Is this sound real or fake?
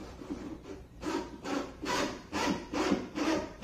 fake